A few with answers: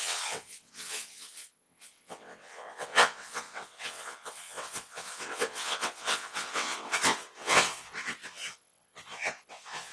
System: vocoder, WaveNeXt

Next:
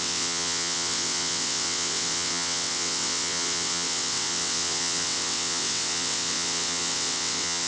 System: vocoder, WaveNeXt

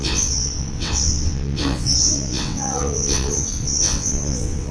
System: vocoder, WaveNeXt